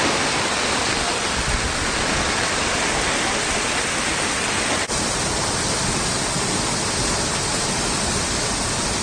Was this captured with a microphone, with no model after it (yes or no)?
yes